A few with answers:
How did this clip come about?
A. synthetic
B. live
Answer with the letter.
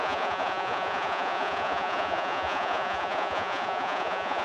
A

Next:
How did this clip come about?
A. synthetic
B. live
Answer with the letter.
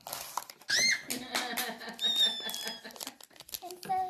B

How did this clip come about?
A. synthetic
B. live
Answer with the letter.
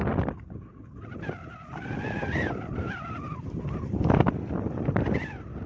B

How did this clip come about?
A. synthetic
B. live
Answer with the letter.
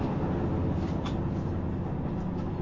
B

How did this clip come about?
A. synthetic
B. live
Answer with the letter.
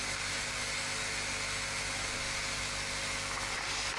B